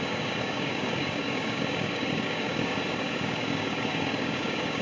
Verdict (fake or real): fake